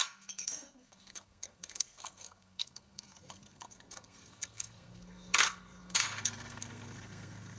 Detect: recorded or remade remade